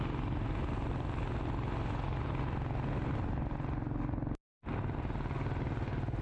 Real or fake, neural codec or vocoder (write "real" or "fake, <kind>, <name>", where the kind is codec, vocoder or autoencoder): real